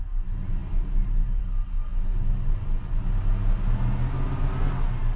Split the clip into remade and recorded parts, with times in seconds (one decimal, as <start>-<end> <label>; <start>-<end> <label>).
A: 0.0-5.2 recorded

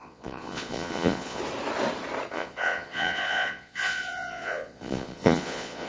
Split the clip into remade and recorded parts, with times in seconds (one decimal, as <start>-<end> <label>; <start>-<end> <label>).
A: 0.0-1.4 remade; 1.4-2.3 recorded; 2.3-5.9 remade

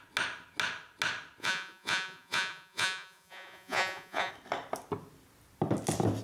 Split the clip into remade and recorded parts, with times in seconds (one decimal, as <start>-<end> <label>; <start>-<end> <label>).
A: 0.0-1.4 recorded; 1.4-4.3 remade; 4.3-6.2 recorded